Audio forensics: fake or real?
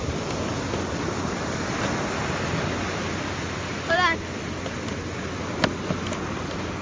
real